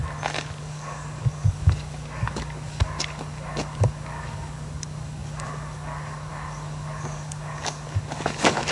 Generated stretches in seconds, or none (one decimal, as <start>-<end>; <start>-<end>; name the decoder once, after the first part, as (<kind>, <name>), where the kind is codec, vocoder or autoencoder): 0.6-8.7 (codec, DAC)